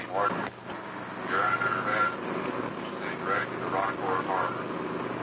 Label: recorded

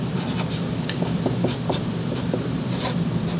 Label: remade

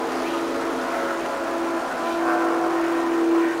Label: recorded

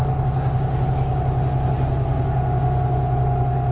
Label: recorded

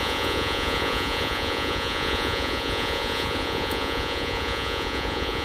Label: remade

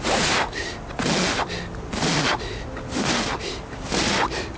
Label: recorded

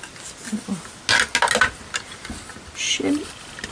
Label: recorded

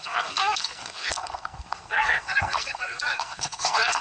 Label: remade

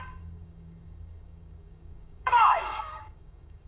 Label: remade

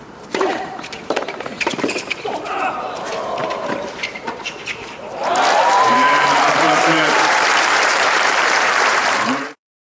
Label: remade